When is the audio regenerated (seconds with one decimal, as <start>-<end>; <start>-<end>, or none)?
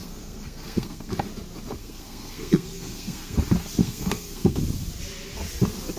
0.0-1.1; 1.8-3.4; 3.8-4.6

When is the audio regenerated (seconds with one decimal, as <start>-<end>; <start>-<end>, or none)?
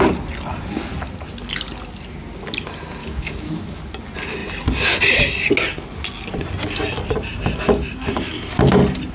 3.0-3.8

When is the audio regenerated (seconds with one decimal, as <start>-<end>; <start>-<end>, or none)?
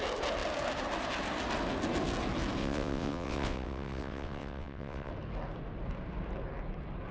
2.6-5.1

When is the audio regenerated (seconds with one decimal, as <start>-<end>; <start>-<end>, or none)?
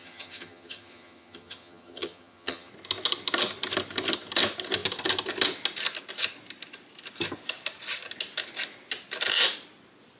0.0-2.7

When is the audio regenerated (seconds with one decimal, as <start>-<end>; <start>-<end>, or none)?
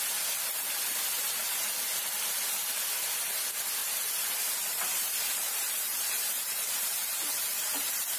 3.8-8.2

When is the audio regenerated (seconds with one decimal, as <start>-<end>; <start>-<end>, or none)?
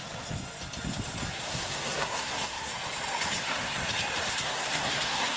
1.3-2.7; 3.4-3.8; 4.3-5.4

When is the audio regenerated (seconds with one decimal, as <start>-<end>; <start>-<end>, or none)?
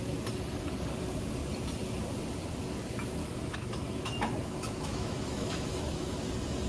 3.2-6.1